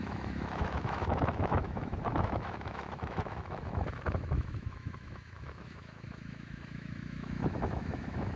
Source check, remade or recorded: remade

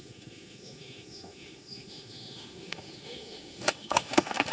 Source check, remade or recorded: remade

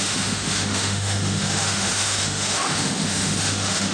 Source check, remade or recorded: remade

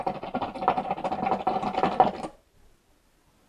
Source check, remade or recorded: recorded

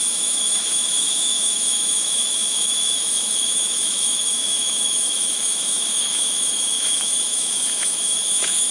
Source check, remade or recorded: remade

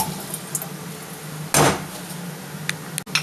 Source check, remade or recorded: recorded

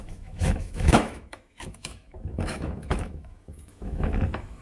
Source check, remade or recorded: remade